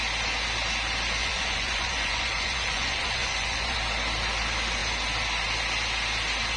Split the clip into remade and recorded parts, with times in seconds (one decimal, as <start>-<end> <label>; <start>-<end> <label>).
0.0-1.2 recorded; 1.2-3.8 remade; 3.8-6.6 recorded